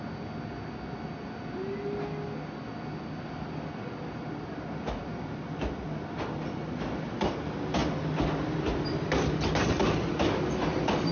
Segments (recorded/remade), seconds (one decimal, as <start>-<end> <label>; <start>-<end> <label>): 0.0-11.1 recorded